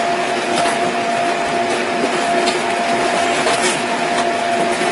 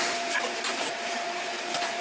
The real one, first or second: first